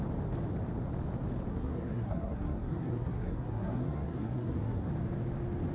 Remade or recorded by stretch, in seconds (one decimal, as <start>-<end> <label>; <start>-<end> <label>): 0.0-1.5 recorded; 1.5-4.9 remade; 4.9-5.7 recorded